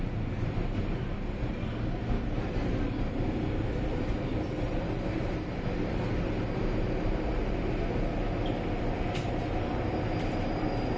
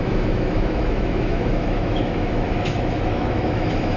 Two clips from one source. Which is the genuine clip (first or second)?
first